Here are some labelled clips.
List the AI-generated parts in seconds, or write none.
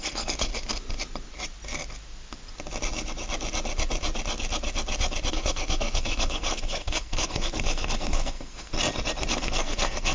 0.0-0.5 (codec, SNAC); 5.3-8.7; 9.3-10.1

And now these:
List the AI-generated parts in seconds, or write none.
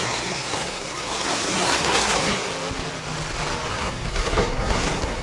0.0-2.5 (codec, SNAC); 3.7-5.2